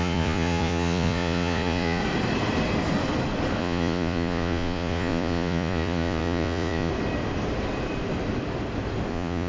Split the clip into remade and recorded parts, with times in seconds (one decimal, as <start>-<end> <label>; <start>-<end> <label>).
0.0-2.0 remade; 2.0-3.6 recorded; 3.6-6.9 remade; 6.9-9.1 recorded; 9.1-9.5 remade